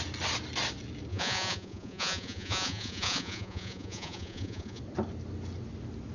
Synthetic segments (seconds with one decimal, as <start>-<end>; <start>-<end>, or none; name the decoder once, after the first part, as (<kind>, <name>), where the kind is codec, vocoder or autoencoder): 1.1-4.8 (vocoder, Vocos)